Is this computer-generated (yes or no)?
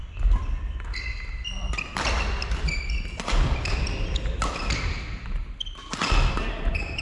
no